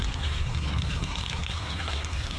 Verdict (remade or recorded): remade